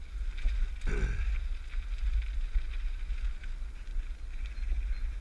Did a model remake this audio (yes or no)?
no